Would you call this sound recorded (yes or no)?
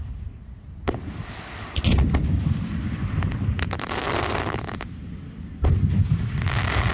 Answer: yes